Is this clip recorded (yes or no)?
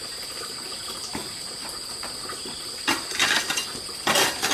yes